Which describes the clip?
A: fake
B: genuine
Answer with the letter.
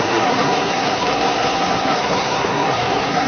A